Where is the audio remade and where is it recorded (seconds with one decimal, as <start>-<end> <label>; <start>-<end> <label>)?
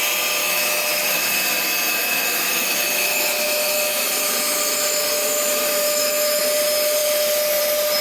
0.0-0.4 recorded; 0.4-1.3 remade; 1.3-1.9 recorded; 1.9-6.4 remade; 6.4-8.0 recorded